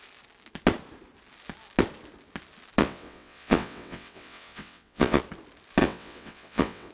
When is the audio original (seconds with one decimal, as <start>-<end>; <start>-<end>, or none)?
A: 0.0-2.8; 5.2-5.8